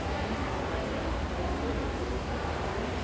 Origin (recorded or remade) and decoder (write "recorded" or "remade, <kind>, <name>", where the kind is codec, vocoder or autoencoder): remade, vocoder, BigVGAN v2